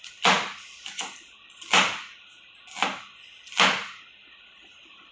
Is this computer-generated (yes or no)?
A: no